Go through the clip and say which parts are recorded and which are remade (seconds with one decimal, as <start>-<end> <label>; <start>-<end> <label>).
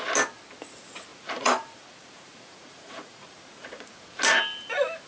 0.0-1.1 recorded; 1.1-4.2 remade; 4.2-5.1 recorded